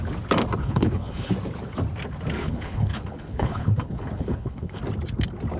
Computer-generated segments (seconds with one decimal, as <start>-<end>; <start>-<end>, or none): 0.6-1.3; 2.4-4.8